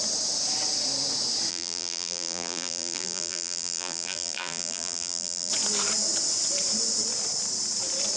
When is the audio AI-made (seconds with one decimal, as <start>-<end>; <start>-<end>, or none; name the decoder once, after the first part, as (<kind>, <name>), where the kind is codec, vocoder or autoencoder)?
1.5-5.5 (vocoder, BigVGAN v2)